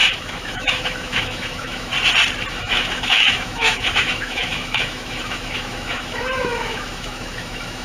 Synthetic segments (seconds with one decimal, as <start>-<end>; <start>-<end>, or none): 0.0-1.9; 2.5-7.8